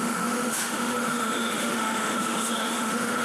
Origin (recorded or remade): remade